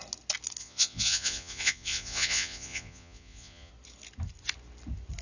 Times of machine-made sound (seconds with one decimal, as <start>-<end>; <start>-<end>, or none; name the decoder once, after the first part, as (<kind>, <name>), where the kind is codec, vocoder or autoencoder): 0.6-3.7 (vocoder, Vocos)